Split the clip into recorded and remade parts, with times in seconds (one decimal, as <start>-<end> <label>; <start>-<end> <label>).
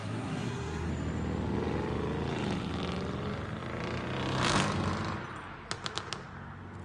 0.0-0.9 remade; 0.9-6.8 recorded